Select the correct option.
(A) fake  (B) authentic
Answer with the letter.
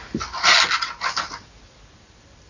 B